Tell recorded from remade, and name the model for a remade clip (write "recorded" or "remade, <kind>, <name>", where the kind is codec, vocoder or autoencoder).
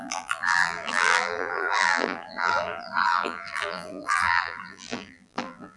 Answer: remade, vocoder, BigVGAN v2